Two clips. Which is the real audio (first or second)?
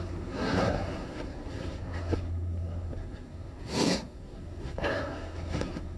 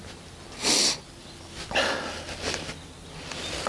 second